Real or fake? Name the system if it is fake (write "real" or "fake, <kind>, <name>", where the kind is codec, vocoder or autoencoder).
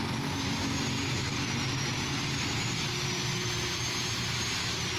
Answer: real